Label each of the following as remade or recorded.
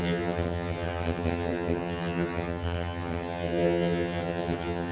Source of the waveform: remade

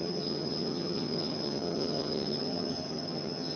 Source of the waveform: remade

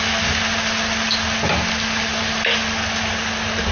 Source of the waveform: recorded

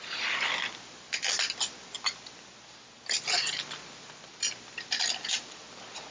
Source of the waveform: recorded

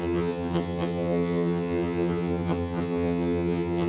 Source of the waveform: remade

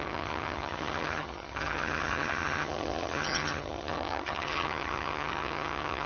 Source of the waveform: remade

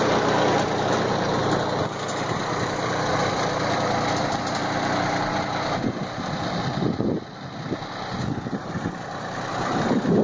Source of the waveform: recorded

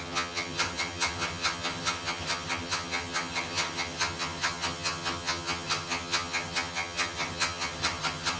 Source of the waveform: remade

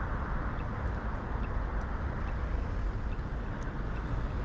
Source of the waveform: recorded